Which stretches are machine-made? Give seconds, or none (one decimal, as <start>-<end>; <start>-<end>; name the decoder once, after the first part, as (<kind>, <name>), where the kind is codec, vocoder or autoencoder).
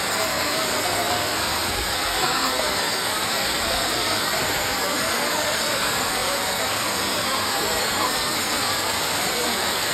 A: 0.0-9.9 (codec, SNAC)